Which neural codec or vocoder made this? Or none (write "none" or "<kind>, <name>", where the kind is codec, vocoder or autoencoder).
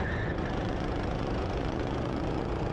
vocoder, Vocos